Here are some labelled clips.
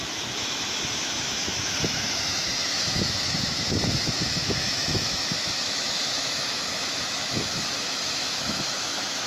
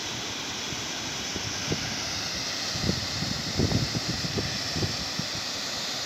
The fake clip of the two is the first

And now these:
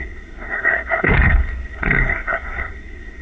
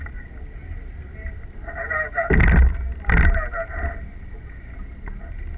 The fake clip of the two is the first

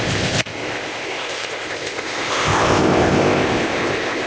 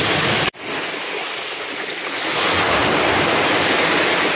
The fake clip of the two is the first